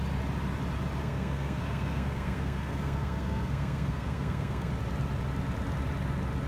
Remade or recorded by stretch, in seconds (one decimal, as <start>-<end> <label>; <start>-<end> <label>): 0.0-1.0 recorded; 1.0-4.7 remade; 4.7-6.5 recorded